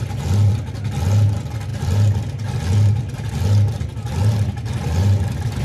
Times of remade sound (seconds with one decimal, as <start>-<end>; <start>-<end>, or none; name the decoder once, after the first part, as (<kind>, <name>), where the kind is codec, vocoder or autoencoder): none